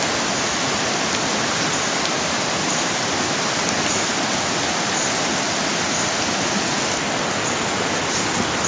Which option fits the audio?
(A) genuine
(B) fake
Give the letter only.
A